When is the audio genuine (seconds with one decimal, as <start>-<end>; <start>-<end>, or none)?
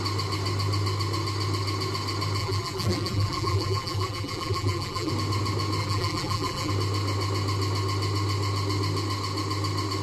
0.0-2.4; 5.1-5.8; 6.7-10.0